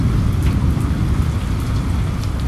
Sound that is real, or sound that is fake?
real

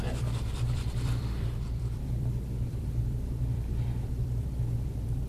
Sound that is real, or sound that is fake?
fake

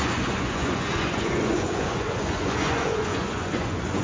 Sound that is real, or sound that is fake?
fake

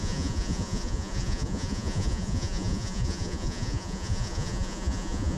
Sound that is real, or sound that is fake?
fake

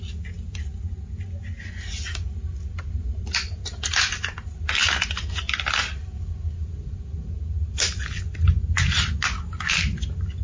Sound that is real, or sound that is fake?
real